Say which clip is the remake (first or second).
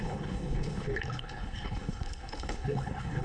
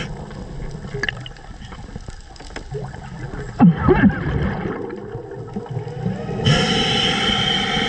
first